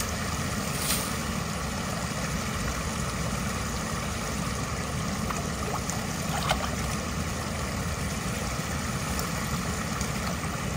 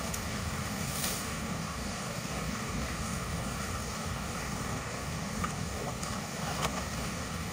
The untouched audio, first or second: first